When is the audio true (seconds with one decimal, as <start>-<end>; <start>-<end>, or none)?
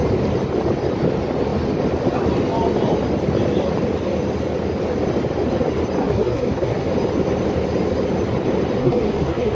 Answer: 0.0-6.0; 6.9-8.8